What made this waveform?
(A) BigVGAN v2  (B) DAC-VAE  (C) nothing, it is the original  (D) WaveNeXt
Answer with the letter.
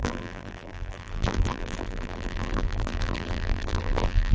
A